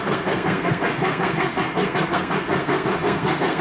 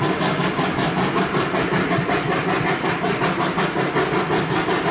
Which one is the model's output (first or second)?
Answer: first